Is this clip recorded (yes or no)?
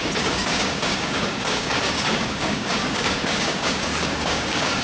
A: no